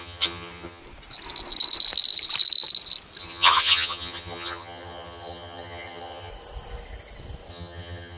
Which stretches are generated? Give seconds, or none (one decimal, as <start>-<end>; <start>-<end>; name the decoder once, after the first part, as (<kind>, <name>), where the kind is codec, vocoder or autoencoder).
0.0-0.8 (vocoder, HiFi-GAN); 3.2-6.3; 7.5-8.2